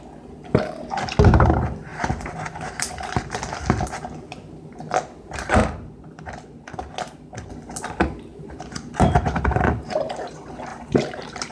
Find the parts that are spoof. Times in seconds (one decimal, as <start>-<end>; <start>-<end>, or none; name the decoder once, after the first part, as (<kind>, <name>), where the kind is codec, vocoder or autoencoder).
1.9-2.9 (vocoder, BigVGAN v2); 8.3-10.0; 10.7-11.5